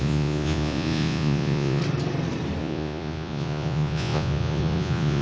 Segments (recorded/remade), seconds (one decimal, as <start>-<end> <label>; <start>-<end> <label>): 0.0-1.8 remade; 1.8-2.6 recorded; 2.6-5.2 remade

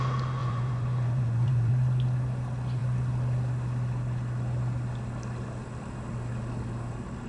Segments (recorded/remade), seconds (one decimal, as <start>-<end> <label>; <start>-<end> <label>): 0.0-0.4 recorded; 0.4-1.7 remade; 1.7-7.3 recorded

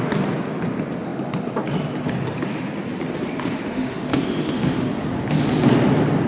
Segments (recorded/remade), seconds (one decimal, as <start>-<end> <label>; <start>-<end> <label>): 0.0-3.7 recorded; 3.7-4.8 remade; 4.8-6.3 recorded

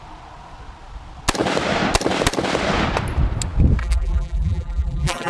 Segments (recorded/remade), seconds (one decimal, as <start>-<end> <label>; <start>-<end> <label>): 0.0-3.8 recorded; 3.8-5.3 remade

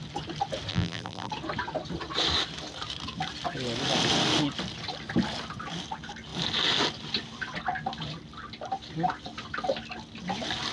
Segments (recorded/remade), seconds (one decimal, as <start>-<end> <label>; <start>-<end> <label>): 0.0-0.7 recorded; 0.7-1.3 remade; 1.3-10.7 recorded

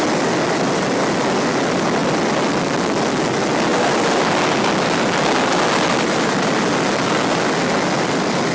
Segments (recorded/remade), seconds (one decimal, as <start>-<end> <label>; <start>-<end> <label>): 0.0-8.5 recorded